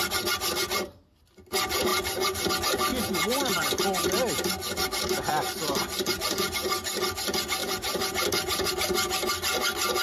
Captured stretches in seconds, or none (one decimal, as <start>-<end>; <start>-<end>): 0.0-1.9; 2.5-2.9; 3.6-5.3; 6.7-7.6; 8.7-10.0